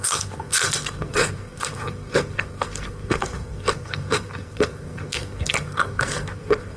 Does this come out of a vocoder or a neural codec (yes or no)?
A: yes